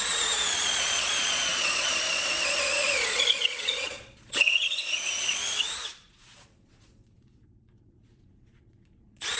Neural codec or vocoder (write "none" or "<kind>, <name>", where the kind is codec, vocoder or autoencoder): vocoder, Vocos